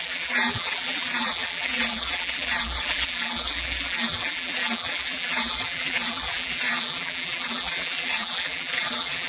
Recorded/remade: remade